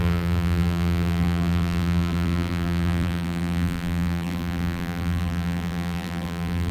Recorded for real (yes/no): no